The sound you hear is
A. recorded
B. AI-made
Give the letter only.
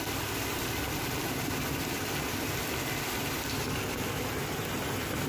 A